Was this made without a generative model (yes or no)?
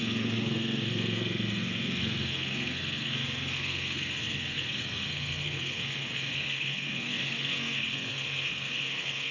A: no